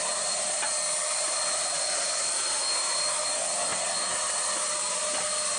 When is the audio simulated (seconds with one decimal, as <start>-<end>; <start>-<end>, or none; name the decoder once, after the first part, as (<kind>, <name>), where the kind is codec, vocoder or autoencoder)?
1.6-2.2 (vocoder, Vocos)